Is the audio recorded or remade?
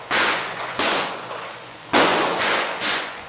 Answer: remade